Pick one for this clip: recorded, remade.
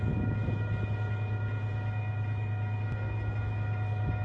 recorded